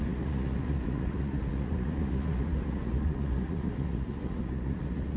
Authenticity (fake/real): fake